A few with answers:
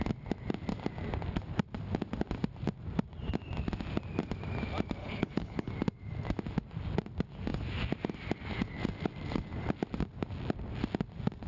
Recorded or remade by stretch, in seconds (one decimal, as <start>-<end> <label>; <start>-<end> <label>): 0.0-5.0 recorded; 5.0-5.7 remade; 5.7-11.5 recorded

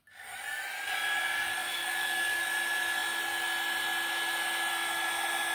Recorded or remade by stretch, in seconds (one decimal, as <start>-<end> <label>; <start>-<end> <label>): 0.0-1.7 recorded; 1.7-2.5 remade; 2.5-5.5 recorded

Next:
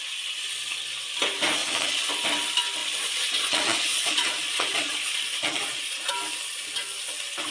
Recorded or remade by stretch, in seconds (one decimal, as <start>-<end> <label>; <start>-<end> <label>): 0.0-1.6 recorded; 1.6-2.1 remade; 2.1-2.8 recorded; 2.8-6.1 remade; 6.1-7.5 recorded

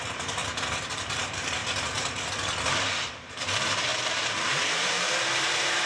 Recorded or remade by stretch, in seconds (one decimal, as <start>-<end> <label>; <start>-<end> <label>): 0.0-0.4 remade; 0.4-0.9 recorded; 0.9-1.6 remade; 1.6-3.2 recorded; 3.2-5.9 remade